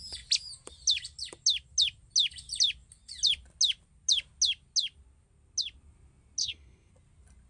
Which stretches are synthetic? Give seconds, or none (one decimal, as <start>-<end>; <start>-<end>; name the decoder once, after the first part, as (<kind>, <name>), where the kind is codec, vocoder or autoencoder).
6.4-6.9 (codec, SNAC)